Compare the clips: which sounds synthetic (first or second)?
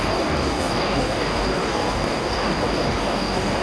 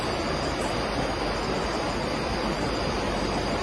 first